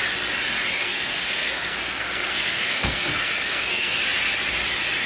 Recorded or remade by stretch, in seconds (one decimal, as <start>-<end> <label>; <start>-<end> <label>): 0.0-0.8 recorded; 0.8-3.9 remade; 3.9-5.1 recorded